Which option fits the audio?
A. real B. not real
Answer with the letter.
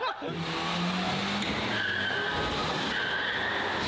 A